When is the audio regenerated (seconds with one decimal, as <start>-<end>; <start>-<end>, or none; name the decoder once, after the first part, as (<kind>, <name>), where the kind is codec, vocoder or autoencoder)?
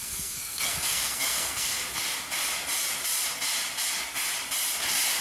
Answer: 0.0-1.8 (codec, SNAC)